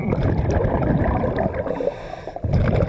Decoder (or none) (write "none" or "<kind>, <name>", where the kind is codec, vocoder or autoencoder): vocoder, BigVGAN v2